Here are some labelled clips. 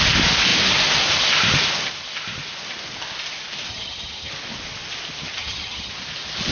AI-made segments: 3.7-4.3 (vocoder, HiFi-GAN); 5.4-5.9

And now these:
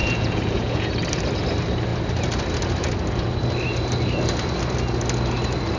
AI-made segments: 0.0-0.9 (vocoder, Vocos)

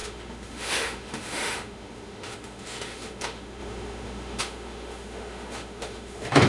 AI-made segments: 0.0-6.5 (autoencoder, DAC-VAE)

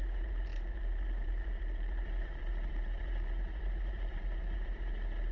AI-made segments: 0.0-5.3 (vocoder, BigVGAN v2)

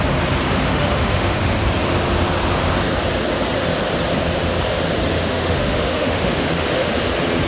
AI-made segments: 0.5-1.4 (autoencoder, DAC-VAE); 5.1-7.0

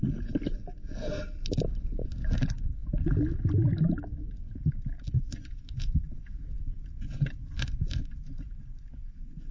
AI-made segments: none

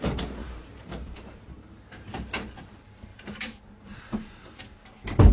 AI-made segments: 0.4-2.6 (vocoder, BigVGAN v2); 3.1-4.6